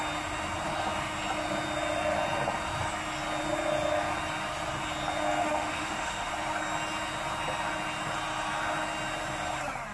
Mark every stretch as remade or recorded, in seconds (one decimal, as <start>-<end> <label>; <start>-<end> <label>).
0.0-5.4 recorded; 5.4-6.3 remade; 6.3-9.9 recorded